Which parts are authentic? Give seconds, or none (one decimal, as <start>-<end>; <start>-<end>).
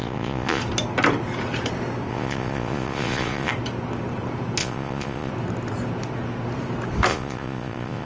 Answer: 0.6-2.1; 3.5-4.6; 5.3-7.1